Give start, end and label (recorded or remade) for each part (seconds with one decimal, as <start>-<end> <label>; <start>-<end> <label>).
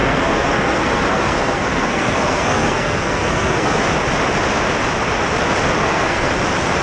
0.0-3.8 remade; 3.8-5.8 recorded; 5.8-6.3 remade; 6.3-6.8 recorded